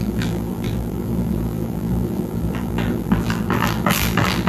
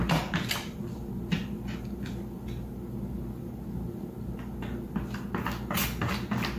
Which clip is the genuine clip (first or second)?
second